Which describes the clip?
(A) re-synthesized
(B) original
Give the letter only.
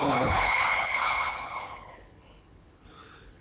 A